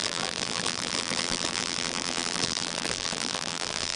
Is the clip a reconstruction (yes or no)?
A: yes